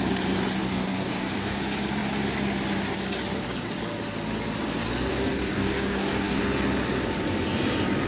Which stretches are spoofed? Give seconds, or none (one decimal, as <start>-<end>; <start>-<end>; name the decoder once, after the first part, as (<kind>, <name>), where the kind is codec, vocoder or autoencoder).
0.6-1.6 (codec, DAC); 5.1-6.4